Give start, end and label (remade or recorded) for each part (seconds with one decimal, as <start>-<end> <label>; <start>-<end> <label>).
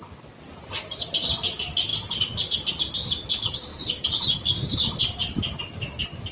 0.0-6.3 recorded